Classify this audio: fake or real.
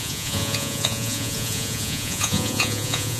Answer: fake